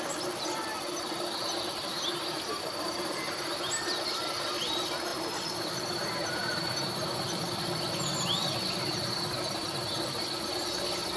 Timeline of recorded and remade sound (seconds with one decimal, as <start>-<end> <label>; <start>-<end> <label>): 0.0-1.9 recorded; 1.9-3.7 remade; 3.7-5.1 recorded; 5.1-7.7 remade; 7.7-11.2 recorded